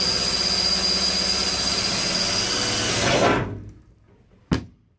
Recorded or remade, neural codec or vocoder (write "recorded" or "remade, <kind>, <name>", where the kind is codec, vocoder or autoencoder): recorded